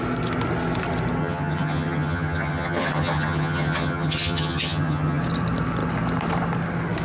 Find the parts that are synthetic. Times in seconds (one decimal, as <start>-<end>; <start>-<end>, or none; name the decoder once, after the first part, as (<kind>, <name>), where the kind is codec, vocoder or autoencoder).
1.2-5.2 (vocoder, HiFi-GAN)